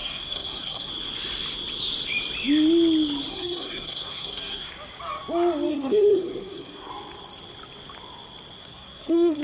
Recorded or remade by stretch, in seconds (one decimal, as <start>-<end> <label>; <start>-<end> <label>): 0.0-0.9 remade; 0.9-3.3 recorded; 3.3-4.7 remade; 4.7-5.7 recorded; 5.7-6.9 remade; 6.9-8.6 recorded; 8.6-9.4 remade